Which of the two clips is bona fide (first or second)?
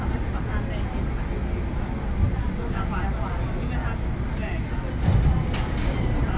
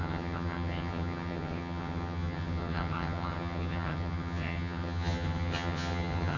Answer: first